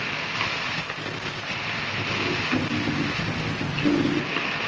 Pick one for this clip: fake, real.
real